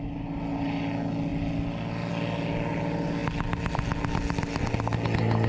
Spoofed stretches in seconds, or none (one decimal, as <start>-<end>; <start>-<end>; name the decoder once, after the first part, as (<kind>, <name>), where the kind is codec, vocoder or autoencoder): none